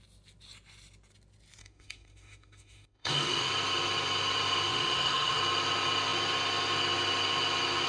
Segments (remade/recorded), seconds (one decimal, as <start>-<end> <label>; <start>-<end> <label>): 0.0-1.6 recorded; 1.6-3.5 remade; 3.5-4.7 recorded; 4.7-5.4 remade; 5.4-7.9 recorded